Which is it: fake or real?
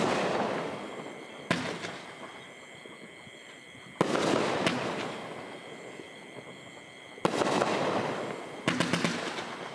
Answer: real